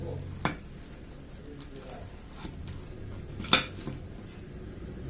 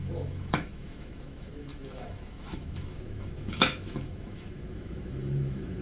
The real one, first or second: first